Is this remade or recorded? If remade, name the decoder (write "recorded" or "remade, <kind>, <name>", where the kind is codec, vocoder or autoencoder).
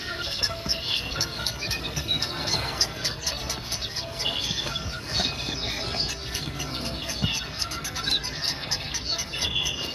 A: remade, codec, SNAC